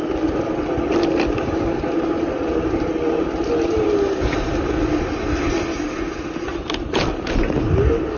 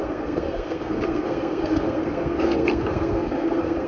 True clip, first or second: first